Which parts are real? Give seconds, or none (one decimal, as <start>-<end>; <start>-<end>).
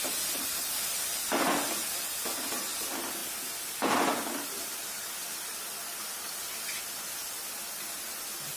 0.9-1.9